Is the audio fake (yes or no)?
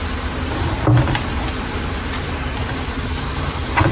yes